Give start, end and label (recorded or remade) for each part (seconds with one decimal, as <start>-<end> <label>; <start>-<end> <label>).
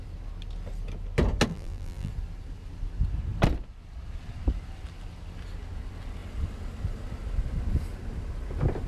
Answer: 0.0-1.5 recorded; 1.5-2.1 remade; 2.1-8.9 recorded